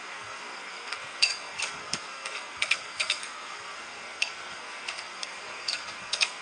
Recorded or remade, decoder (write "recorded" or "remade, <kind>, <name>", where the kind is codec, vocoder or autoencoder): remade, codec, SNAC